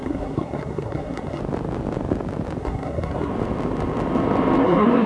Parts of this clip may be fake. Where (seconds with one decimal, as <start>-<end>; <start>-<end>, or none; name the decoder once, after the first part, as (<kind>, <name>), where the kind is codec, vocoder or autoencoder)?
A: 0.0-1.4 (codec, SNAC); 2.6-3.3; 4.6-5.1